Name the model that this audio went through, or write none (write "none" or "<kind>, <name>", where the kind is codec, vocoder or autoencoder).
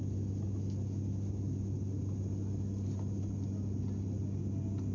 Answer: none